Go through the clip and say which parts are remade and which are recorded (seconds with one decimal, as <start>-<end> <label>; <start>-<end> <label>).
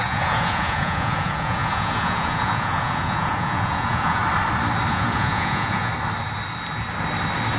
0.0-4.2 remade; 4.2-4.9 recorded; 4.9-5.9 remade; 5.9-7.6 recorded